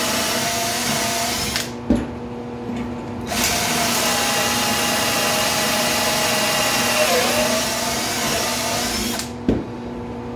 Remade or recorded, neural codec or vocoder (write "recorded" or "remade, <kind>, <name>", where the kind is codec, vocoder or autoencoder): recorded